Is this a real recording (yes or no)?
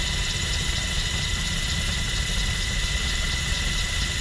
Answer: yes